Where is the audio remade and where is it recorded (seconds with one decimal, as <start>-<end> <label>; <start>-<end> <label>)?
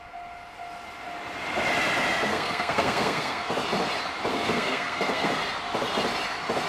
0.0-2.3 recorded; 2.3-3.5 remade; 3.5-4.3 recorded; 4.3-5.3 remade; 5.3-6.7 recorded